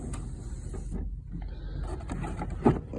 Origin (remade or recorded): recorded